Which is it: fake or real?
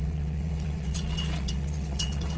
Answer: fake